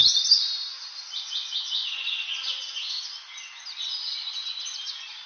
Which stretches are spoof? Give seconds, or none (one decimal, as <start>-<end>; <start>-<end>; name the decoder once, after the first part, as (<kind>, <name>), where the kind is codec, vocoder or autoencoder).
1.8-3.2 (vocoder, Vocos)